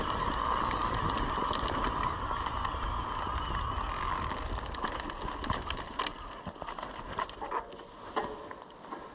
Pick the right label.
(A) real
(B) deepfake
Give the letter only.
A